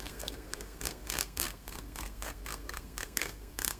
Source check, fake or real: fake